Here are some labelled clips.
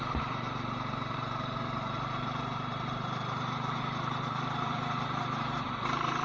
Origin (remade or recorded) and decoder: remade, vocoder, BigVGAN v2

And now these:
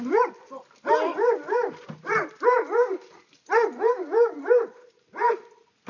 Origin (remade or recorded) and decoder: recorded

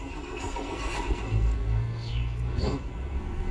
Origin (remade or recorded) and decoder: remade, codec, SNAC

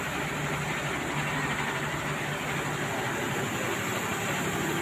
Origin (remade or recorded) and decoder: recorded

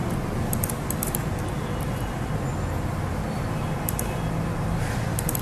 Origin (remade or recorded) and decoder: recorded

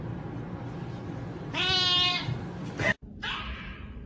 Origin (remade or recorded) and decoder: recorded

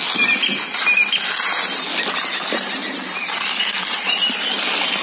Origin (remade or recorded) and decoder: recorded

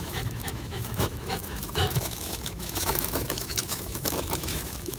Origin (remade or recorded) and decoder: remade, autoencoder, DAC-VAE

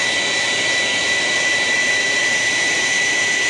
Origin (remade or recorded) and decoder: recorded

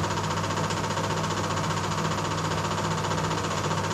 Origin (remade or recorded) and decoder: recorded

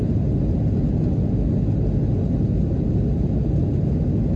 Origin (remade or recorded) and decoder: recorded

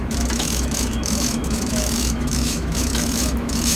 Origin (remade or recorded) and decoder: remade, autoencoder, DAC-VAE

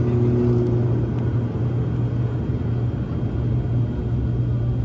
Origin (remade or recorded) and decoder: recorded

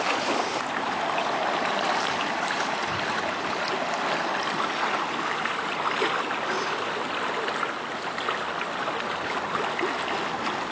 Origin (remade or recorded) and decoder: recorded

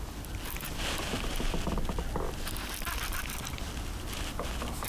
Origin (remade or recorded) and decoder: recorded